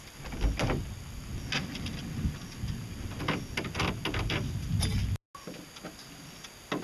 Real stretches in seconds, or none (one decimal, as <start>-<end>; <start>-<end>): 0.0-6.8

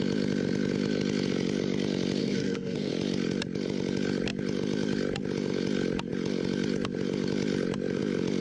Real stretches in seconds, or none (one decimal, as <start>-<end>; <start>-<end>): 0.0-2.2; 2.9-8.4

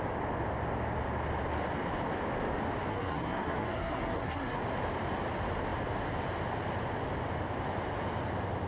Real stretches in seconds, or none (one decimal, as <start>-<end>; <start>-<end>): 0.0-2.9; 4.6-8.7

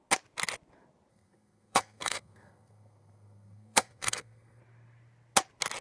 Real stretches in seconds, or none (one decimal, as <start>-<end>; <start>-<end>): 0.0-1.1; 4.6-5.8

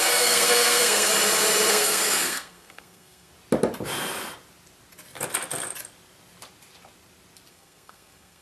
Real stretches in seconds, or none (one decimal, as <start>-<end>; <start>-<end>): 1.1-1.7; 3.3-7.5

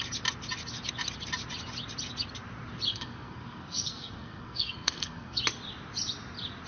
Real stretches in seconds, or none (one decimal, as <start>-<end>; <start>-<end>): 0.0-2.9; 5.4-6.7

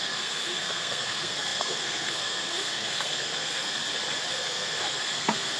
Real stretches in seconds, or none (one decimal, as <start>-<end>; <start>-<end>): 3.8-4.3

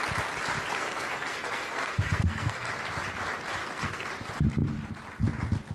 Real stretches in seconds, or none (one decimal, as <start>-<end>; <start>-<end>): 0.0-0.7; 2.7-3.6; 4.1-5.7